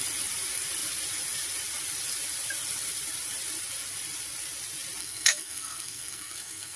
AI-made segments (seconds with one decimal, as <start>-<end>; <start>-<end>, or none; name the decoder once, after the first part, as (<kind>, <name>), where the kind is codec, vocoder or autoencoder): 5.0-6.8 (codec, SNAC)